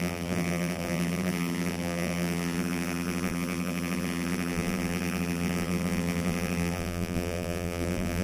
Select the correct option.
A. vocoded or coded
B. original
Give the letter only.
A